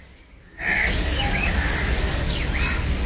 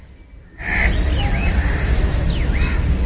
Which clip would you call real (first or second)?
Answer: second